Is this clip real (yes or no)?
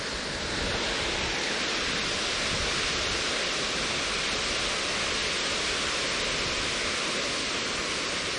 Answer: yes